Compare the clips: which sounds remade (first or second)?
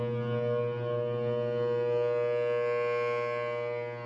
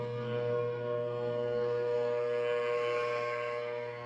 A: second